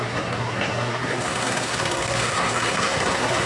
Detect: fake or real fake